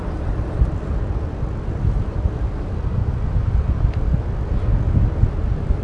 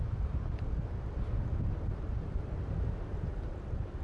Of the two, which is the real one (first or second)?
first